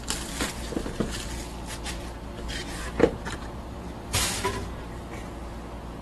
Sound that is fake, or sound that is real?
real